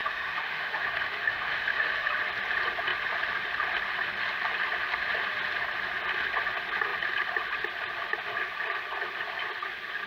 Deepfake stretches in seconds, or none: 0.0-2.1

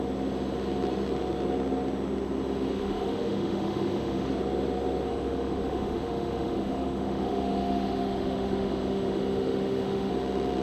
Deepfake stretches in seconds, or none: 2.7-4.3; 5.1-10.1

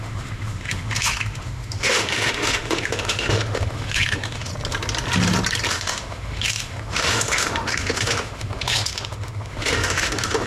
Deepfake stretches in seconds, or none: 0.0-4.5; 5.7-10.5

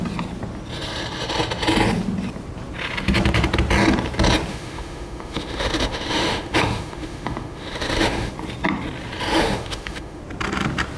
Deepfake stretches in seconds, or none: 4.5-8.3; 9.3-10.2

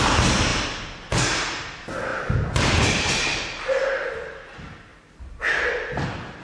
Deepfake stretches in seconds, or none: none

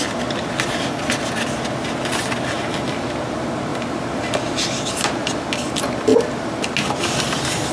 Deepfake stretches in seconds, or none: none

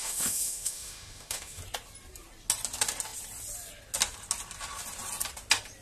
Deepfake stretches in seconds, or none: 0.0-1.6

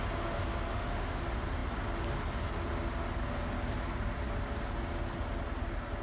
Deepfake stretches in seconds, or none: 0.7-1.2